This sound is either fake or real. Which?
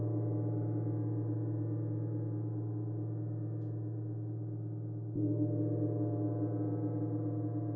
real